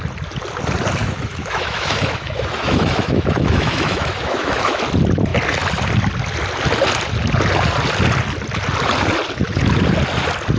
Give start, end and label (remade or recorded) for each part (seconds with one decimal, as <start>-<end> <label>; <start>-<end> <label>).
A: 0.0-1.0 recorded; 1.0-4.8 remade; 4.8-10.6 recorded